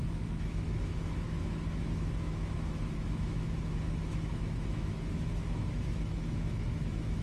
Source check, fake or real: fake